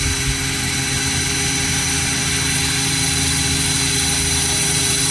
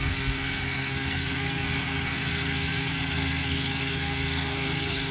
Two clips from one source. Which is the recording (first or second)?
first